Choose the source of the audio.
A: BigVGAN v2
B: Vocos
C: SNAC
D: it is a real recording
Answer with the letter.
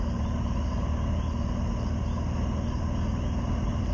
D